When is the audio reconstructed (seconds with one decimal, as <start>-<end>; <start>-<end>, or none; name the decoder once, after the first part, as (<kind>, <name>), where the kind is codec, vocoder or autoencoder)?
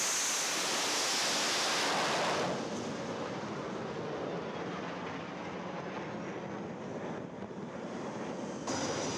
none